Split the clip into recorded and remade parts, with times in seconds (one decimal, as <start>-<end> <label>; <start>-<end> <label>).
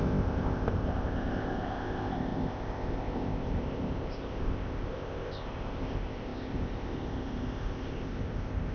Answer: 0.0-8.7 remade